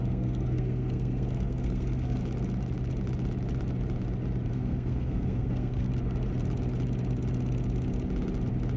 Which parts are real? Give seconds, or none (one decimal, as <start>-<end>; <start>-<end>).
2.2-4.5; 5.9-8.8